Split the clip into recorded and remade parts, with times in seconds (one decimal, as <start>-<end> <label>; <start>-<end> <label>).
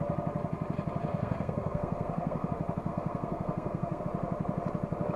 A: 0.0-1.1 recorded; 1.1-2.5 remade; 2.5-2.9 recorded; 2.9-4.0 remade; 4.0-5.2 recorded